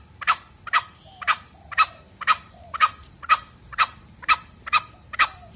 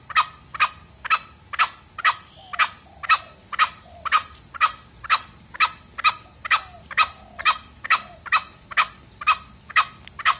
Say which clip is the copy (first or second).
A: first